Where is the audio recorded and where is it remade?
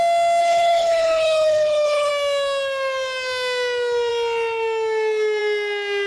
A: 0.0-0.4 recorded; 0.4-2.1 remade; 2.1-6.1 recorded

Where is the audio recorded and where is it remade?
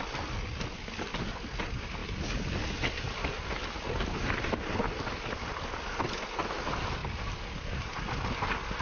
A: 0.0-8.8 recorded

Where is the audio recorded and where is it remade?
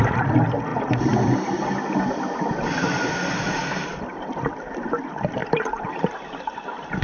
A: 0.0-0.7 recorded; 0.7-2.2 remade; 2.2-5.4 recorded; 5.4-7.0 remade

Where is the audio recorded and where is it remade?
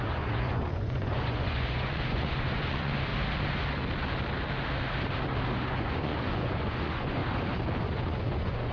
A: 0.0-3.1 remade; 3.1-5.7 recorded; 5.7-7.2 remade; 7.2-7.8 recorded; 7.8-8.7 remade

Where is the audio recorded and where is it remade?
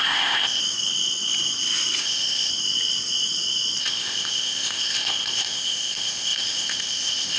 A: 0.0-0.6 remade; 0.6-2.0 recorded; 2.0-2.5 remade; 2.5-3.8 recorded; 3.8-7.4 remade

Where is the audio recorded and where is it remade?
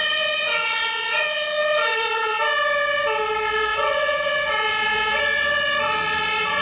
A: 0.0-0.5 recorded; 0.5-2.4 remade; 2.4-3.7 recorded; 3.7-5.2 remade; 5.2-6.6 recorded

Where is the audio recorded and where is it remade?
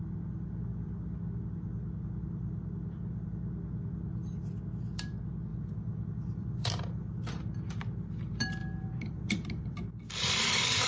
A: 0.0-5.5 recorded; 5.5-6.7 remade; 6.7-8.6 recorded; 8.6-10.9 remade